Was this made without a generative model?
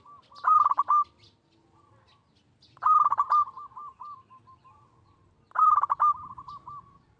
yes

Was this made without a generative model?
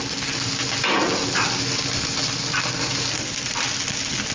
yes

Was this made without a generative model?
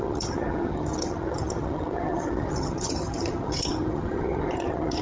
no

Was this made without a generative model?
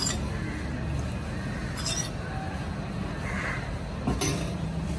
yes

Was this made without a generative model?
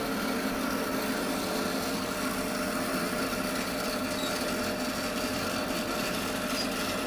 yes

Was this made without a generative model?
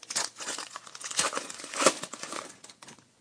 no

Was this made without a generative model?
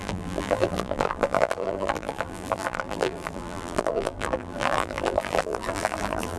no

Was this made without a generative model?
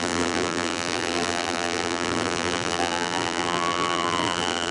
no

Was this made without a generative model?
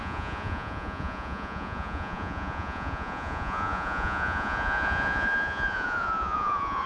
no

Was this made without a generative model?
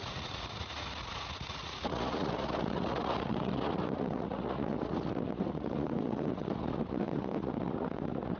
no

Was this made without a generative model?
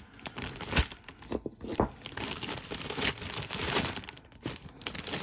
yes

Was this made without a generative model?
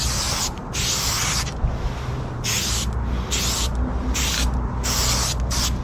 yes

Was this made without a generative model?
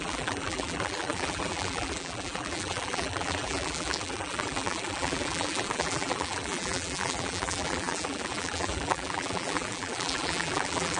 no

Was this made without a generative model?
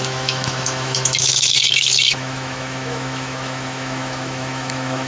no